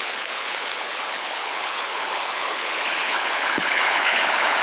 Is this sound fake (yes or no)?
yes